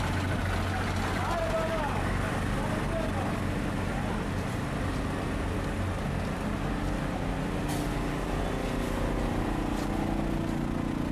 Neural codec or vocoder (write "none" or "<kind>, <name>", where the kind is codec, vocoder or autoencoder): none